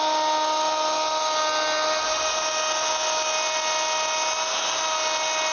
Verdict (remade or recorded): recorded